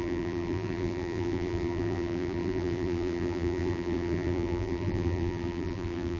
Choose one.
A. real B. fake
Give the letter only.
B